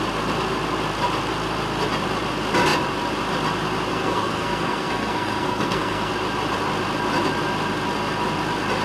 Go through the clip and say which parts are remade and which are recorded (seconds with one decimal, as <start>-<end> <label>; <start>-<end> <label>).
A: 0.0-3.9 recorded; 3.9-6.1 remade; 6.1-8.8 recorded